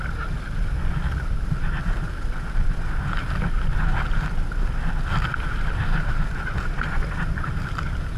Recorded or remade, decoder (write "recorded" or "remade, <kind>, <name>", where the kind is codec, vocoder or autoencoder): recorded